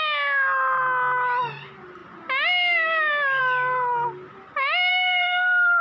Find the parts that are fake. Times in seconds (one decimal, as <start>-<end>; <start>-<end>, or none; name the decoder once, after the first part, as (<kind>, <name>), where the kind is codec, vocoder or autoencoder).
4.9-5.8 (codec, SNAC)